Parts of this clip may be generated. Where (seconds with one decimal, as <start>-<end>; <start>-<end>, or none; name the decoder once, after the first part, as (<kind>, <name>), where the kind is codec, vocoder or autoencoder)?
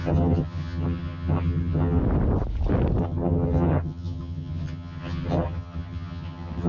0.0-2.0 (vocoder, HiFi-GAN); 3.0-6.7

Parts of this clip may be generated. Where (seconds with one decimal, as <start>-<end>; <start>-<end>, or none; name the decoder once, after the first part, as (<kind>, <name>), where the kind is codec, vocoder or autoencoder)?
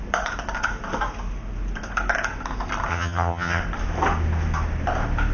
2.9-3.6 (vocoder, HiFi-GAN)